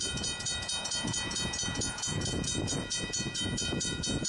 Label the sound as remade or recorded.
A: remade